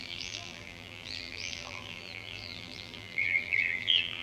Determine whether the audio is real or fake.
fake